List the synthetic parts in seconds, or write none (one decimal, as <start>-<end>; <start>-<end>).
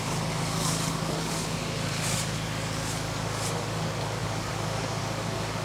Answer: 0.0-5.6